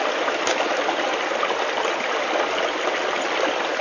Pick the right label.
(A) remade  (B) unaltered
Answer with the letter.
A